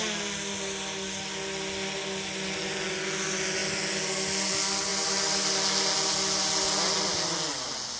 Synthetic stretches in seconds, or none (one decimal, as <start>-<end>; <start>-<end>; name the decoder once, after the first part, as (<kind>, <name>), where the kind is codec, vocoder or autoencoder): none

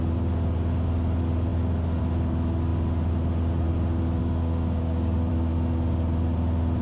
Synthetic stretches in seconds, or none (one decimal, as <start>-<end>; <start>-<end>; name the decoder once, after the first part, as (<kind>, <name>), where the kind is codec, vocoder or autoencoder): 4.2-5.3 (codec, DAC)